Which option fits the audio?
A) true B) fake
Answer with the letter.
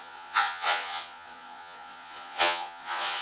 B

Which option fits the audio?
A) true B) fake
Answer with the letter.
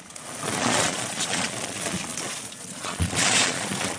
B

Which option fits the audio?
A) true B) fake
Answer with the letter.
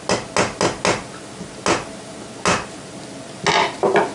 A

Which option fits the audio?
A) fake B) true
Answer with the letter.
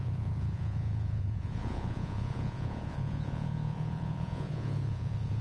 A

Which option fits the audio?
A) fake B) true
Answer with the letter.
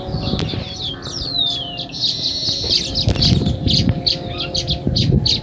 B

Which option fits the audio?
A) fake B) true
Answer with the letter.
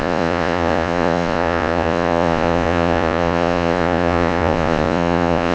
A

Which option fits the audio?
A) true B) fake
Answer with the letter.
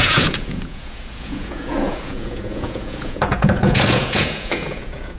B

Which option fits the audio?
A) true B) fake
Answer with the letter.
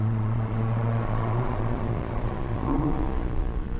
B